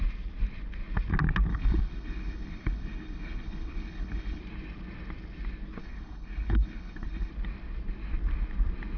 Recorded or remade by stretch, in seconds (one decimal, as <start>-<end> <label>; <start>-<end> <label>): 0.0-1.5 recorded; 1.5-4.4 remade; 4.4-5.8 recorded; 5.8-7.3 remade; 7.3-9.0 recorded